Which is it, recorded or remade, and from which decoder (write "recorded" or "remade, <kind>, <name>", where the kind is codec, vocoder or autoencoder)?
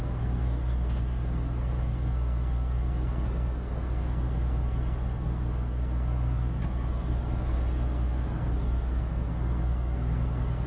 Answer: remade, codec, SNAC